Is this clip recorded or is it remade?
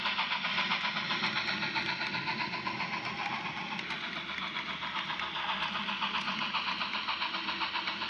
recorded